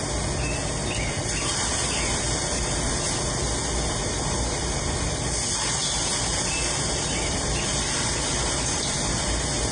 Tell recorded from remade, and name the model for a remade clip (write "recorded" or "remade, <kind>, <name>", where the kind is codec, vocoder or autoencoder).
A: recorded